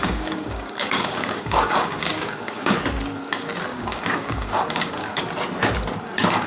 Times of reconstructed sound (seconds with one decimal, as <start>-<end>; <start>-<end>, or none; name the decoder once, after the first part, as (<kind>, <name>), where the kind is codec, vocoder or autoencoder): 0.0-2.7 (codec, DAC); 3.7-5.2